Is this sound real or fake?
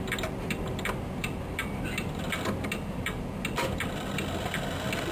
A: real